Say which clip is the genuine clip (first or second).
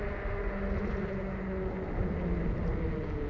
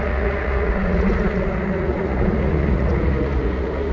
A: first